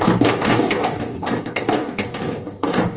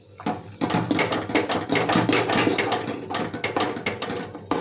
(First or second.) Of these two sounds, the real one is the second